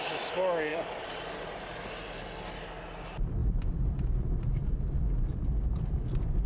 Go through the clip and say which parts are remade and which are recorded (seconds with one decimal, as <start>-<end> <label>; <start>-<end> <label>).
0.0-0.7 recorded; 0.7-2.2 remade; 2.2-3.4 recorded; 3.4-6.5 remade